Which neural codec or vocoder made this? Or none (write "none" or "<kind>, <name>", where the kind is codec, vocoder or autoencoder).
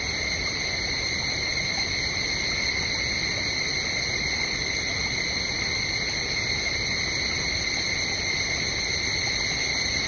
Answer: none